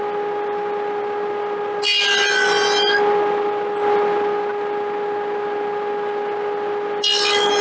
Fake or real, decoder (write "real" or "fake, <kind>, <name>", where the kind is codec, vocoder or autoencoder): real